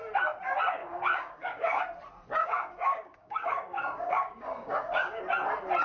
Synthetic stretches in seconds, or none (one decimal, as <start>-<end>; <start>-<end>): 0.8-1.8; 2.4-5.2